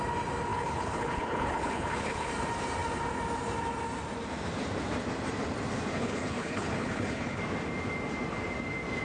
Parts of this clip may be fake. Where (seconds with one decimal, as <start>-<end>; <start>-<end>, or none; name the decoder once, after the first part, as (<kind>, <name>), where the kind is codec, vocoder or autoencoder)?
0.5-2.3 (codec, HILCodec); 5.9-7.4